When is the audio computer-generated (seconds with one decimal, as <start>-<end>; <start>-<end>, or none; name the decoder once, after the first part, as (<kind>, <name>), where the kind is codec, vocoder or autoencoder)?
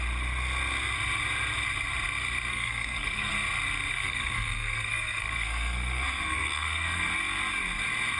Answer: 2.5-3.3 (codec, SNAC); 3.9-7.1